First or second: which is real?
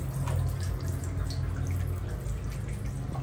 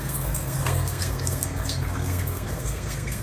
first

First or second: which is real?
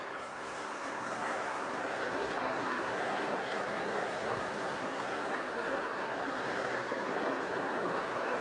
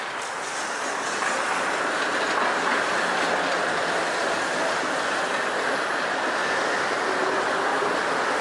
second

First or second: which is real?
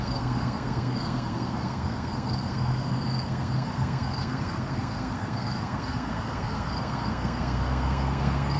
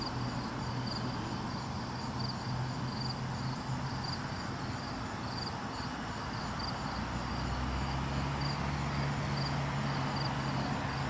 second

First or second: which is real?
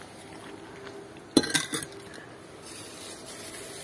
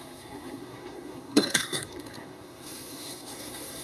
first